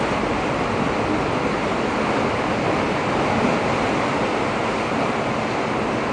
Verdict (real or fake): real